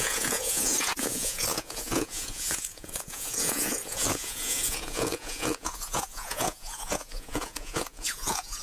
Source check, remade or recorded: remade